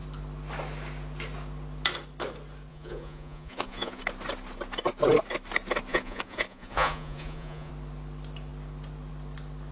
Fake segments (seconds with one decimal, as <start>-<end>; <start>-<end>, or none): 2.7-4.0; 5.9-7.7